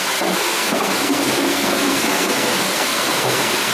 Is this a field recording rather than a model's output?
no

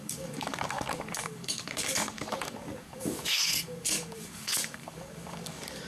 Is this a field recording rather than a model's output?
no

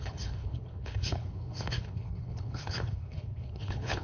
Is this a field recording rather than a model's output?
no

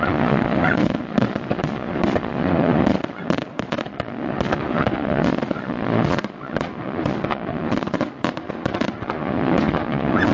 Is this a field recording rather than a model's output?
no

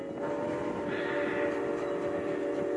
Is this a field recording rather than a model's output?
yes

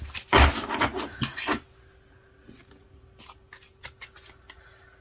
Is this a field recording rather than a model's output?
yes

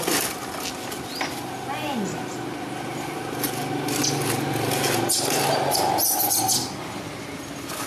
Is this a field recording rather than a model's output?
yes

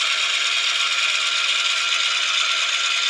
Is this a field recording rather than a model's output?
yes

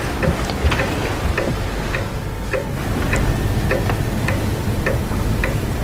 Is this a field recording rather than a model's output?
no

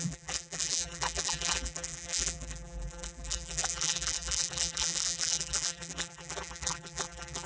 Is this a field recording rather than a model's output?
no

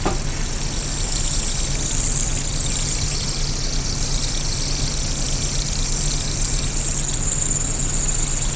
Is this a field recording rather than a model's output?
yes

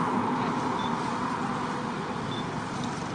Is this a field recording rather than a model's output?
yes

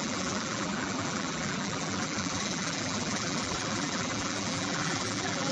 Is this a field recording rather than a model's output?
no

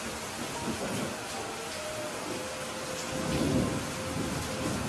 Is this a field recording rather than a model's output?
yes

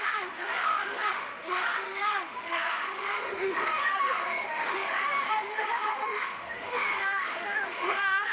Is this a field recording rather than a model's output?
no